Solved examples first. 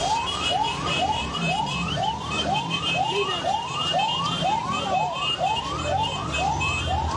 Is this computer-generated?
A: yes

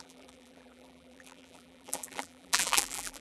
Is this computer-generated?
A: yes